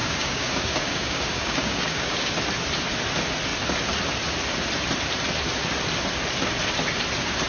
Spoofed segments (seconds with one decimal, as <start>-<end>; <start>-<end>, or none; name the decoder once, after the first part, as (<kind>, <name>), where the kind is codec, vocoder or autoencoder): 0.0-2.3 (codec, DAC)